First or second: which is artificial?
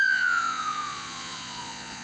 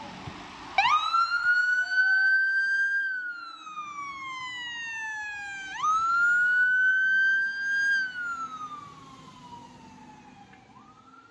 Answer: first